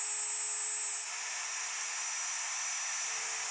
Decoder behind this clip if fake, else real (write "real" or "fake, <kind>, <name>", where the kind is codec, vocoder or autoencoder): real